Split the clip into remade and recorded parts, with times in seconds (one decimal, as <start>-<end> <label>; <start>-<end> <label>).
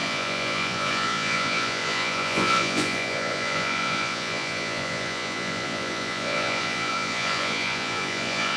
0.0-8.6 remade